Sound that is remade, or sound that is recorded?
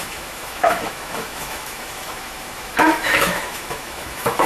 remade